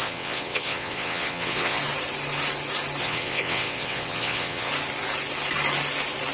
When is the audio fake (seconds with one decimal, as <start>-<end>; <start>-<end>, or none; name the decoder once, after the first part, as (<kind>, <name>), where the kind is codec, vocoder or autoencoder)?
0.0-1.8 (vocoder, WaveNeXt); 3.0-4.7